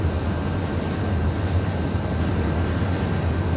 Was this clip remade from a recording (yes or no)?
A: no